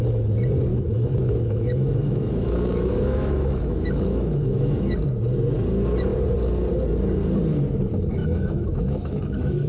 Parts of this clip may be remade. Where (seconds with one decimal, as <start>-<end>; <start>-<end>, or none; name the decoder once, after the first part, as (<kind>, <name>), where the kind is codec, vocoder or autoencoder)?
0.7-4.8 (autoencoder, DAC-VAE); 8.2-9.7